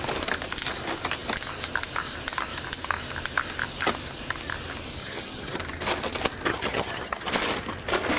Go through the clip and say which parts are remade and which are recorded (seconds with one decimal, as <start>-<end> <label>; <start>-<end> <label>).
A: 0.0-5.0 recorded; 5.0-5.6 remade; 5.6-6.5 recorded; 6.5-7.3 remade; 7.3-8.2 recorded